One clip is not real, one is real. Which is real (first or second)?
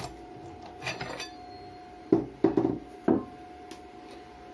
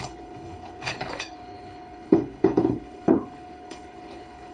first